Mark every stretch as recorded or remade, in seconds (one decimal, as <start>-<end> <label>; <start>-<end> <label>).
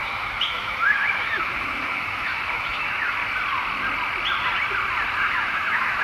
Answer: 0.0-3.2 remade; 3.2-5.3 recorded; 5.3-6.0 remade